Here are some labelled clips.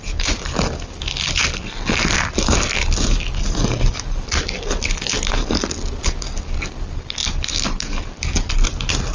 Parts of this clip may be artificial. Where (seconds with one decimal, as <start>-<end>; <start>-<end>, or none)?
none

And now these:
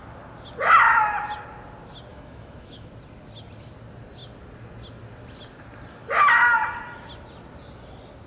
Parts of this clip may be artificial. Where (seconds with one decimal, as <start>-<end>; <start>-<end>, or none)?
2.1-2.9

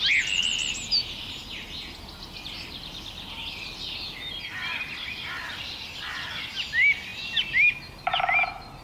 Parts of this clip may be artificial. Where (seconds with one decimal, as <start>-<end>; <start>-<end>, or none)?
none

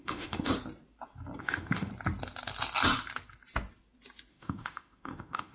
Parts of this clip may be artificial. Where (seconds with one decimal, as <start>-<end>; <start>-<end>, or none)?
0.0-0.5; 1.4-1.9; 4.3-5.5

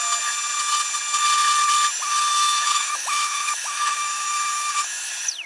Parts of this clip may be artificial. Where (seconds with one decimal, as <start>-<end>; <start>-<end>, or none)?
2.3-5.1

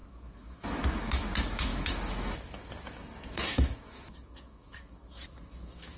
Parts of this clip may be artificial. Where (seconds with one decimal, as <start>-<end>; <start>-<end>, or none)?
0.0-6.0

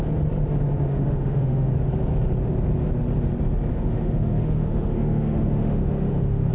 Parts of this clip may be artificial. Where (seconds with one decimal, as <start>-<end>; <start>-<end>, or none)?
0.9-1.7; 3.7-6.5

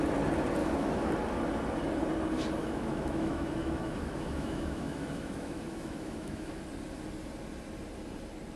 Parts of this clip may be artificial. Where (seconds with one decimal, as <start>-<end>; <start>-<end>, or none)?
0.6-1.1; 2.6-6.6